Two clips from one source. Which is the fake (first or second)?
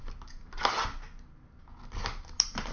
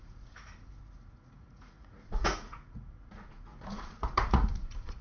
second